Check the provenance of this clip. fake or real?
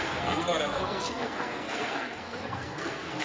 fake